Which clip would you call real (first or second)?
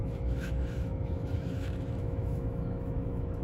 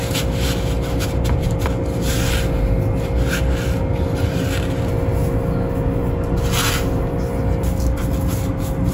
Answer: second